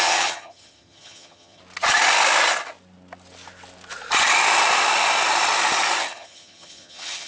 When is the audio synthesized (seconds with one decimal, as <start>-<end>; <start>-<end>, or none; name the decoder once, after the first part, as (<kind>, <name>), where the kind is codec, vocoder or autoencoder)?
0.0-1.6 (vocoder, HiFi-GAN); 6.0-7.3